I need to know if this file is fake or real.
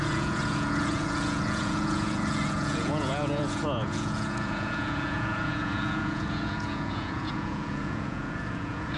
fake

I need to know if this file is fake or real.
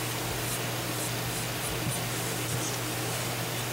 real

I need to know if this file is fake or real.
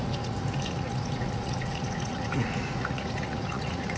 fake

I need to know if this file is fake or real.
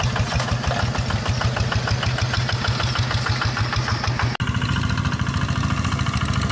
real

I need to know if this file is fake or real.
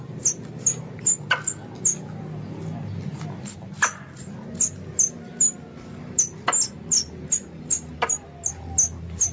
real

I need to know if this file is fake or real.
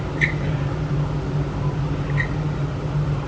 real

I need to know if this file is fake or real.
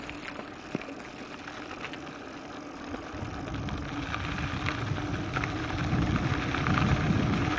real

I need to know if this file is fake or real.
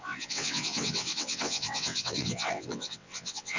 fake